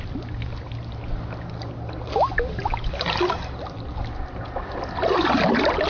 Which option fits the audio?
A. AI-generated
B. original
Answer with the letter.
B